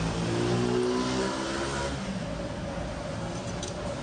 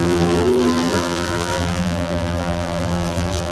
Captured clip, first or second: first